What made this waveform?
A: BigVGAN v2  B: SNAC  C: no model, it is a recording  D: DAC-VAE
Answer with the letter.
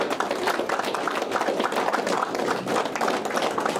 C